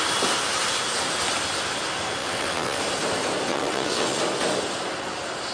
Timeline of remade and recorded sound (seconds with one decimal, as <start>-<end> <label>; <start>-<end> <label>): 0.0-2.2 recorded; 2.2-2.8 remade; 2.8-3.5 recorded; 3.5-4.2 remade; 4.2-5.5 recorded